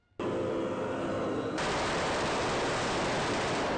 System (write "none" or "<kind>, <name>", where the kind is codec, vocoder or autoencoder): none